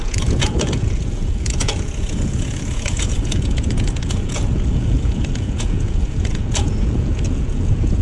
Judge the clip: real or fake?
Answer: fake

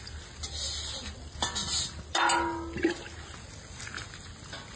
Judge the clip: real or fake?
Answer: real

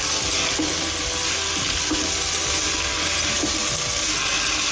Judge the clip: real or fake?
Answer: real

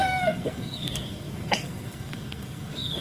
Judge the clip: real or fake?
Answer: fake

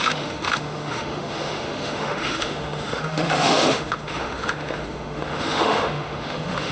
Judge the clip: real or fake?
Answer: fake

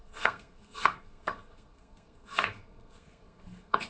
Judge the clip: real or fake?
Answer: fake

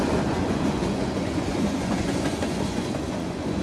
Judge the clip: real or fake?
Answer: fake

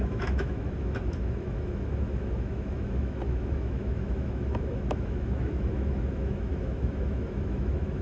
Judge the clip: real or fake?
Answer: fake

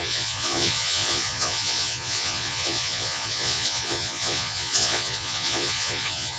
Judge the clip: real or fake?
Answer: fake